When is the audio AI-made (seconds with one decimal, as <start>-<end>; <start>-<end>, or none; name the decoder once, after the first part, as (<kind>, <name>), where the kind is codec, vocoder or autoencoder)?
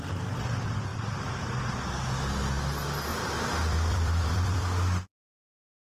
0.9-1.6 (vocoder, BigVGAN v2); 3.1-5.8